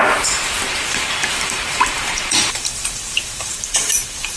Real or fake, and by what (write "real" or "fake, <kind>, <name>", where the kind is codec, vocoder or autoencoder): fake, vocoder, BigVGAN v2